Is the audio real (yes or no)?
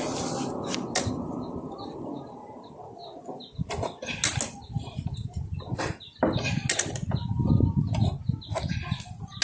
yes